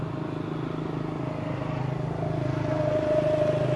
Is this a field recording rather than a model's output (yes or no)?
yes